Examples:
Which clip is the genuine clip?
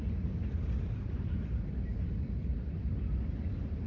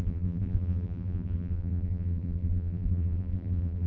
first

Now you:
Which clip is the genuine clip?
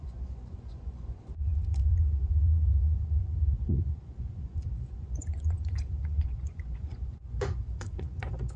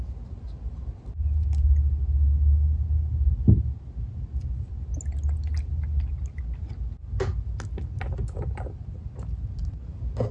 second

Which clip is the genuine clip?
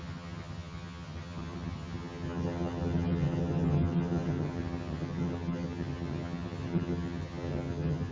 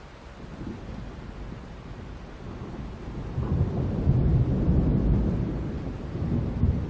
second